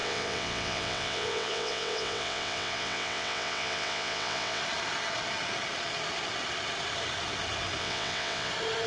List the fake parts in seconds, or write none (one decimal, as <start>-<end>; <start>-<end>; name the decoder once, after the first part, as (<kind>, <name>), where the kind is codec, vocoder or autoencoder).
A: 0.0-4.6 (vocoder, WaveNeXt); 7.8-8.5